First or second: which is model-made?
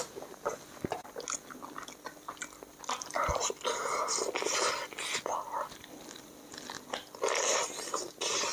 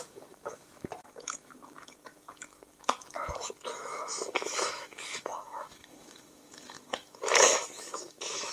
second